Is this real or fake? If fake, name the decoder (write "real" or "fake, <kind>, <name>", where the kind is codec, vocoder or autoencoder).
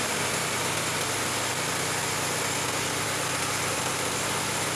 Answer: real